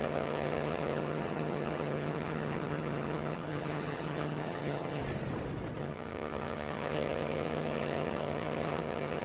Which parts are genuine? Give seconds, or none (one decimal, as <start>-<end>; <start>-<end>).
5.0-5.8